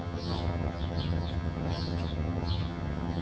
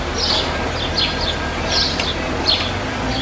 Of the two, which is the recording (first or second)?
second